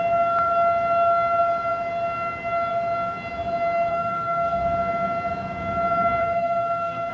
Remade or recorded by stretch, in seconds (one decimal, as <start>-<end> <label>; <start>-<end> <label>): 0.0-3.9 recorded; 3.9-4.6 remade; 4.6-6.2 recorded; 6.2-7.1 remade